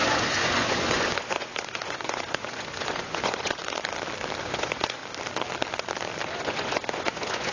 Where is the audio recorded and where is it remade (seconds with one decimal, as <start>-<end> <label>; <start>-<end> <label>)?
0.0-3.6 remade; 3.6-4.4 recorded; 4.4-5.0 remade; 5.0-6.2 recorded; 6.2-7.5 remade